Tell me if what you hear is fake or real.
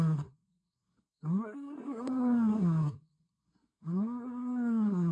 fake